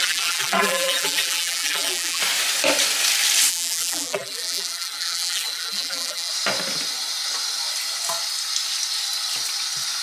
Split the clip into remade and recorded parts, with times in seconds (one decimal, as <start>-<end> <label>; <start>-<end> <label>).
0.0-2.2 remade; 2.2-3.5 recorded; 3.5-6.3 remade; 6.3-10.0 recorded